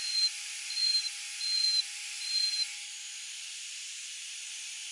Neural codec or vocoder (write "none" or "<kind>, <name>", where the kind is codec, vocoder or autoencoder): vocoder, BigVGAN v2